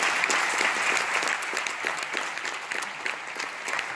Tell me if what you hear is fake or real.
real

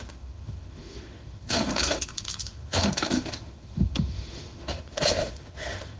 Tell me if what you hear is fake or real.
fake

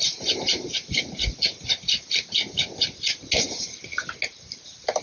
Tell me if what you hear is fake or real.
real